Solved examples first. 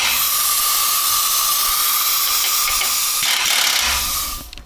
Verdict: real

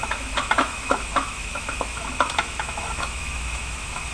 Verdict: fake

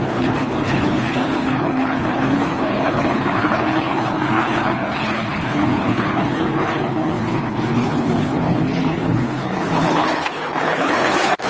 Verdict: fake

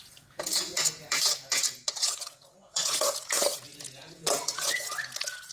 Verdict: fake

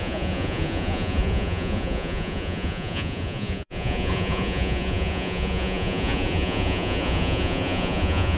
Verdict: fake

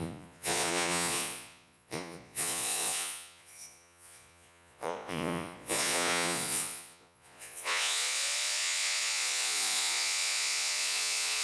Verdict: fake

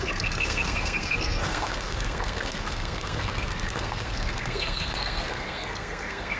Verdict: fake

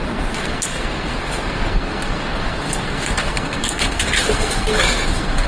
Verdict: fake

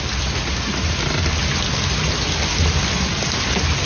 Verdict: real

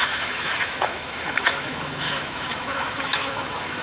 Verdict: fake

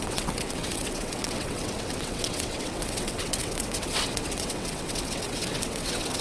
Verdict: fake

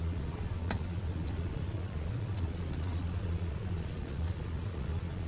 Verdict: fake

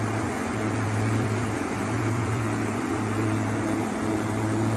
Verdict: fake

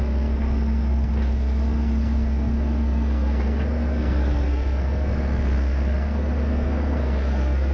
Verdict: fake